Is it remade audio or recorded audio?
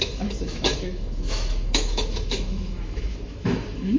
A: remade